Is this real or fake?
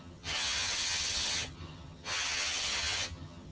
fake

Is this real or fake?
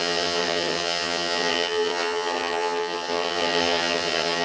fake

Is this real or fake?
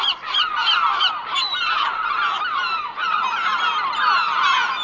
real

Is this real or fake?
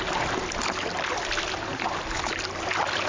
real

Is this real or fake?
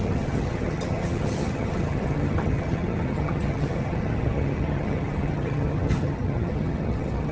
fake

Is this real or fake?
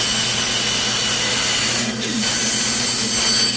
real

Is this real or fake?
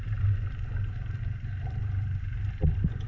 real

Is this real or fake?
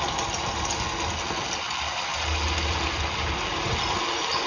real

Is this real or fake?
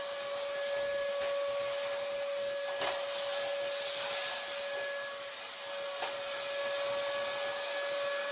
real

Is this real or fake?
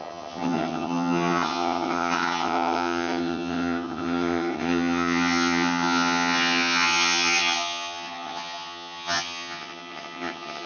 fake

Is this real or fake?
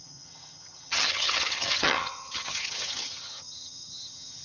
fake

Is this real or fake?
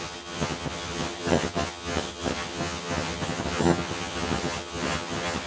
fake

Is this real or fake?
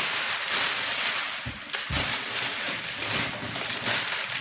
real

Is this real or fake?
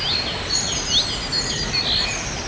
real